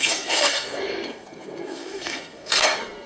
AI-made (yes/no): yes